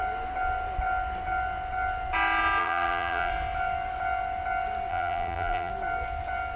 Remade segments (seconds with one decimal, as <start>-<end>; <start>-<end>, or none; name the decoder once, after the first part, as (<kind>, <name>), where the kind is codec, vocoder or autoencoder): 2.6-3.3 (vocoder, BigVGAN v2); 4.9-5.7